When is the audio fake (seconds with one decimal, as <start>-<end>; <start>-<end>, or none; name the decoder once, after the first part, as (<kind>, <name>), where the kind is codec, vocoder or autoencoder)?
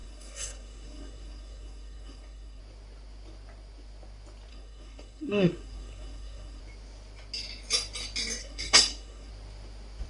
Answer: 0.0-2.6 (codec, SNAC); 4.5-6.6; 8.4-9.3